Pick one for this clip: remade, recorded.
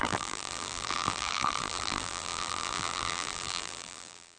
remade